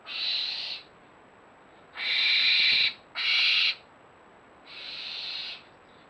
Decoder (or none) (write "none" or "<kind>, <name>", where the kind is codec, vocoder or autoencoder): none